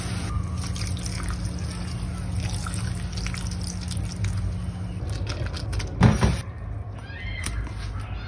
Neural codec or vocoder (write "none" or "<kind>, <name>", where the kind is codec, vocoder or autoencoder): none